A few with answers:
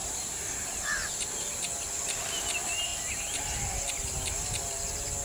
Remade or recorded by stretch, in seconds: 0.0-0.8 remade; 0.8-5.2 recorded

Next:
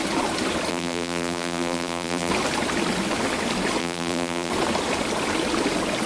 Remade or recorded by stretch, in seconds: 0.0-0.7 recorded; 0.7-2.3 remade; 2.3-3.8 recorded; 3.8-4.5 remade; 4.5-6.1 recorded

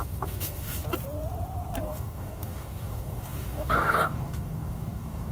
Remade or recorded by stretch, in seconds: 0.0-0.8 remade; 0.8-1.8 recorded; 1.8-5.3 remade

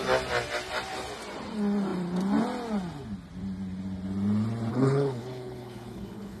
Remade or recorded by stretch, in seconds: 0.0-4.7 recorded; 4.7-6.4 remade

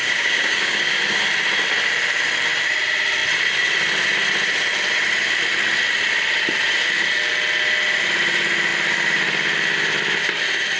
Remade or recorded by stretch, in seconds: 0.0-1.0 remade; 1.0-10.8 recorded

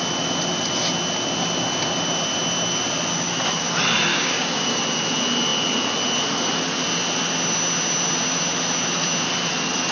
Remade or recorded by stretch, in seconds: 0.0-4.1 recorded; 4.1-4.8 remade; 4.8-9.9 recorded

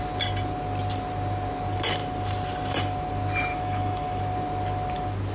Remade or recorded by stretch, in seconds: 0.0-3.5 recorded; 3.5-4.2 remade; 4.2-5.3 recorded

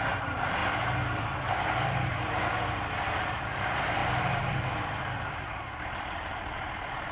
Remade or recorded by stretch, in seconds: 0.0-0.6 remade; 0.6-1.2 recorded; 1.2-7.1 remade